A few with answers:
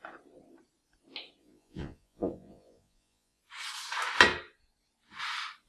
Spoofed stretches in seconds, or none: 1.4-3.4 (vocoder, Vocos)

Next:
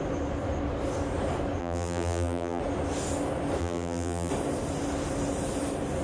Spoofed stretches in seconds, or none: 1.6-2.6 (vocoder, BigVGAN v2); 3.6-4.3

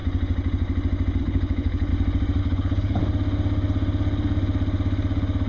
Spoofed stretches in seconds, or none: 1.2-1.9 (codec, HILCodec); 2.4-3.0

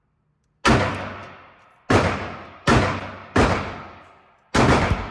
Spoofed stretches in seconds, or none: none

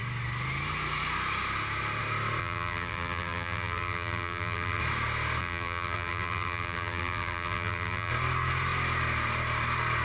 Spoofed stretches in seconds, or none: 2.4-4.8 (vocoder, BigVGAN v2); 5.4-8.1